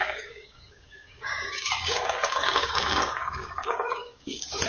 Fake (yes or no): yes